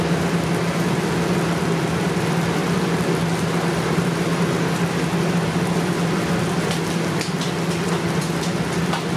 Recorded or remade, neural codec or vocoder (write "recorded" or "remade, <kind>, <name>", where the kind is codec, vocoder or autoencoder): recorded